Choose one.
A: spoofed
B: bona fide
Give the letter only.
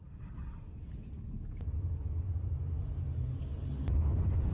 B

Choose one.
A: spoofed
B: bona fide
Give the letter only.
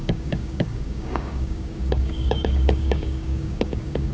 A